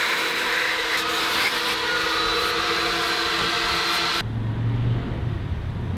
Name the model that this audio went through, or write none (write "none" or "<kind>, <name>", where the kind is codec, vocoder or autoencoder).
none